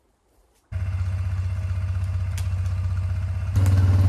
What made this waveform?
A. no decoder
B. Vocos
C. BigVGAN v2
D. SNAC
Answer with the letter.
A